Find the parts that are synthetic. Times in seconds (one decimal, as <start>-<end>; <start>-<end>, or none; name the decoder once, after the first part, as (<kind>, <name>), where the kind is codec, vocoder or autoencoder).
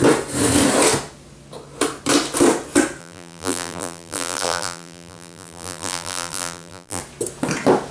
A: 3.0-7.0 (vocoder, BigVGAN v2)